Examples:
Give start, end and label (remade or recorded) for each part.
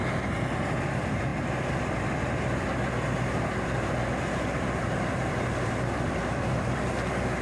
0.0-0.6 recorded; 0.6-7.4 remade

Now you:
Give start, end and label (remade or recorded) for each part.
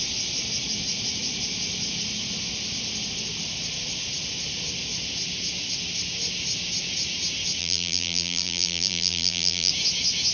0.0-7.6 recorded; 7.6-9.7 remade; 9.7-10.3 recorded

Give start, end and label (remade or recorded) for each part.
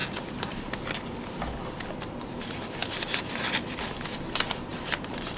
0.0-0.8 remade; 0.8-4.7 recorded; 4.7-5.4 remade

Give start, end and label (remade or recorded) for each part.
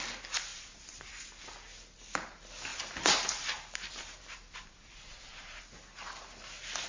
0.0-0.5 recorded; 0.5-1.1 remade; 1.1-2.7 recorded; 2.7-5.6 remade; 5.6-6.9 recorded